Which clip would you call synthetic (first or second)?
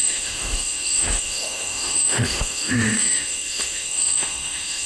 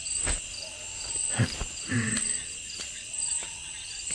first